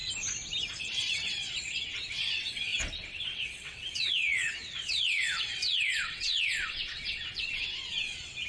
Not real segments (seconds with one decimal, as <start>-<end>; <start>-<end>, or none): 0.8-8.5